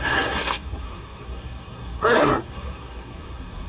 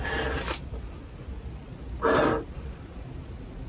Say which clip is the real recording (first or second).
second